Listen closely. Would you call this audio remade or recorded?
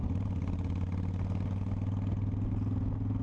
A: recorded